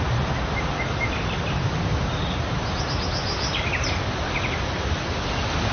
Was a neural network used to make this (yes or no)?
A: no